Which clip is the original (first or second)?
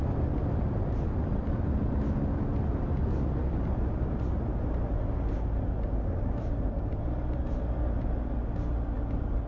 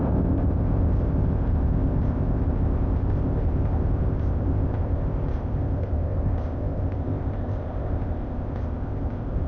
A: first